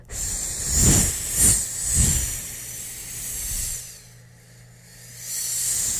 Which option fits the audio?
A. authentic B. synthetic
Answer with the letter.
A